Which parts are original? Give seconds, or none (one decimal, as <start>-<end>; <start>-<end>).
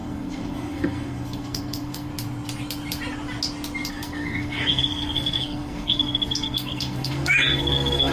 2.1-3.9